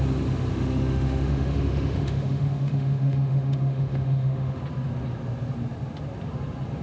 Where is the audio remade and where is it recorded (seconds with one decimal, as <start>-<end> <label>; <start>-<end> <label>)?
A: 0.0-0.5 recorded; 0.5-4.6 remade; 4.6-6.8 recorded